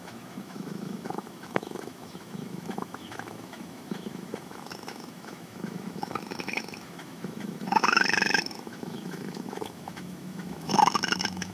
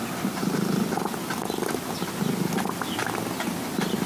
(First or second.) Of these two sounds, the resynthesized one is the first